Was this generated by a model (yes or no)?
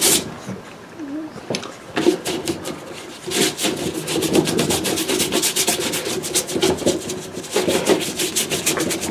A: no